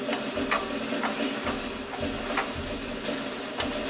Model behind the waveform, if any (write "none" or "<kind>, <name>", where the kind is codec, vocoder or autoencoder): none